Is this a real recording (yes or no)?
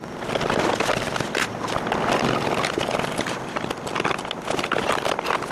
yes